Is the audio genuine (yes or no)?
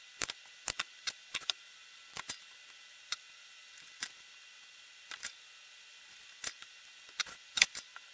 no